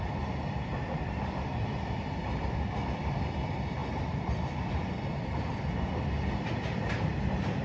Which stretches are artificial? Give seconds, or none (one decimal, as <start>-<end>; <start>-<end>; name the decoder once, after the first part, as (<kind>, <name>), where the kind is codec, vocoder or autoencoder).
none